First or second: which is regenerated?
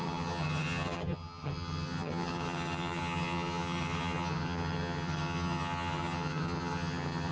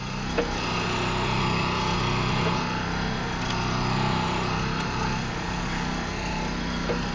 first